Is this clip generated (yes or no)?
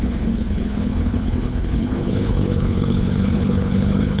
yes